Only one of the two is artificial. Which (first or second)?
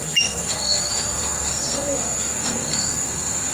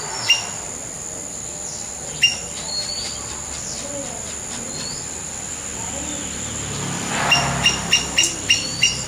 first